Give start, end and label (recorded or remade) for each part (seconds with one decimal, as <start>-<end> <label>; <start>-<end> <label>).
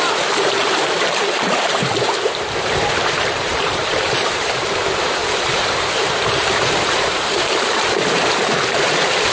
0.0-5.2 remade; 5.2-5.8 recorded; 5.8-9.3 remade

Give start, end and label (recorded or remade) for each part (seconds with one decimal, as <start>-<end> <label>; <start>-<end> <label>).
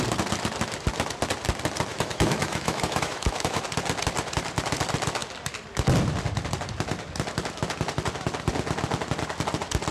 0.0-1.9 recorded; 1.9-3.6 remade; 3.6-9.9 recorded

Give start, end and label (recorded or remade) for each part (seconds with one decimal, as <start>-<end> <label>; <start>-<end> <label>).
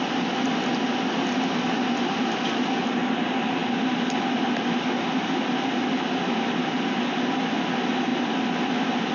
0.0-9.1 recorded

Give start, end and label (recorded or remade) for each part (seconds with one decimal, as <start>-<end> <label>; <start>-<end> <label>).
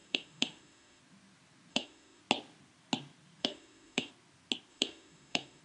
0.0-1.0 remade; 1.0-1.7 recorded; 1.7-2.2 remade; 2.2-3.4 recorded; 3.4-4.1 remade; 4.1-4.7 recorded; 4.7-5.6 remade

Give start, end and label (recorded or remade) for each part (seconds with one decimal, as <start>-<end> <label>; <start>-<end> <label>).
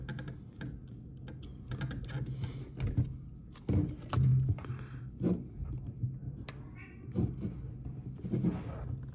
0.0-9.1 recorded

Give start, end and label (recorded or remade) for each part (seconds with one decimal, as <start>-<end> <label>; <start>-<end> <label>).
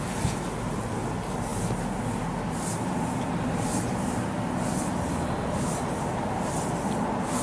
0.0-7.4 recorded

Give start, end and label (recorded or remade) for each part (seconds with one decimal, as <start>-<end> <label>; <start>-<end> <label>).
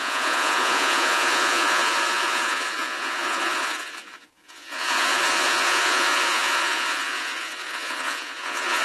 0.0-8.8 remade